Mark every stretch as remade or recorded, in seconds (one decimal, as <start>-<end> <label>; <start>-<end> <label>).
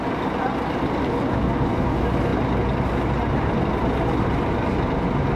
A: 0.0-5.4 recorded